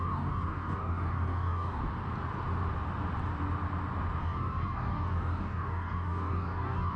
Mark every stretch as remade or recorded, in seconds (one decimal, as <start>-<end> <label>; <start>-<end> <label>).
0.0-1.8 remade; 1.8-4.2 recorded; 4.2-7.0 remade